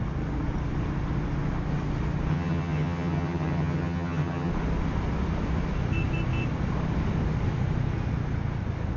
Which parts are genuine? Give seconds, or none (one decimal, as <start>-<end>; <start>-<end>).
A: 0.0-2.3; 4.5-9.0